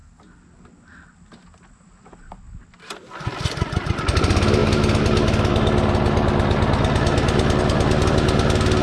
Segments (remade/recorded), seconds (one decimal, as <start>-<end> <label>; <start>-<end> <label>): 0.0-8.8 recorded